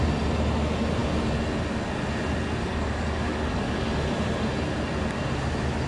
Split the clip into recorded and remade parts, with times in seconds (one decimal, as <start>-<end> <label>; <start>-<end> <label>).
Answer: 0.0-2.6 recorded; 2.6-3.9 remade; 3.9-5.9 recorded